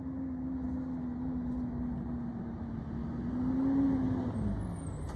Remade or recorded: recorded